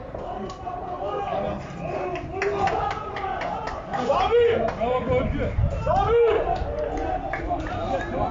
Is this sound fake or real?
real